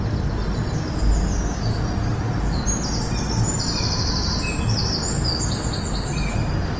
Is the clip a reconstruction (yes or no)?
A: no